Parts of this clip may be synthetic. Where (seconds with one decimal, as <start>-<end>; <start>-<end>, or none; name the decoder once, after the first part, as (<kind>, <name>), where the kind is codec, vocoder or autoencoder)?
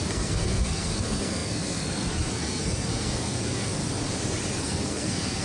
0.0-3.8 (codec, SNAC); 4.6-5.4